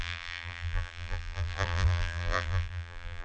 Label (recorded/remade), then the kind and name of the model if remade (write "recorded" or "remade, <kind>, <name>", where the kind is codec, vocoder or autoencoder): remade, vocoder, BigVGAN v2